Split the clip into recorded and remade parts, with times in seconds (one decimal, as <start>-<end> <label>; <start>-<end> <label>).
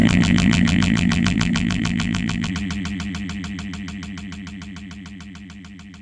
0.0-2.5 remade; 2.5-6.0 recorded